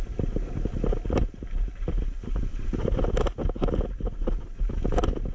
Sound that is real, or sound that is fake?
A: real